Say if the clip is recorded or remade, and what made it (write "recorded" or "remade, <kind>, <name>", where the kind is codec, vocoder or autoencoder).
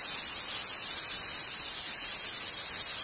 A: recorded